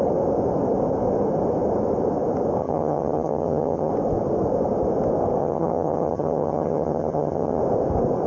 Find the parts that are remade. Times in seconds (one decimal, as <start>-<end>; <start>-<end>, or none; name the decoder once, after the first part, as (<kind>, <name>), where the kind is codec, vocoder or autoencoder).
2.6-3.9 (vocoder, HiFi-GAN); 5.4-7.6